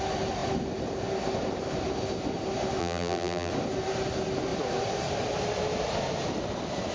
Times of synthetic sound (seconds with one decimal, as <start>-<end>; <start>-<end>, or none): 2.8-3.5